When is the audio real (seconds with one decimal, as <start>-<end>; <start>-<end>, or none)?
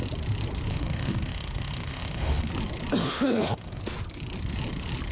0.0-0.7; 2.5-3.0; 3.8-5.1